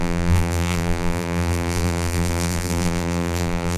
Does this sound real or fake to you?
fake